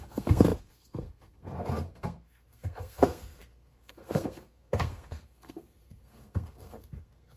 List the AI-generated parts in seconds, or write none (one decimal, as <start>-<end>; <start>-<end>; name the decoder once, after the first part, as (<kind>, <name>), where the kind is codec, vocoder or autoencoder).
0.0-7.4 (codec, SNAC)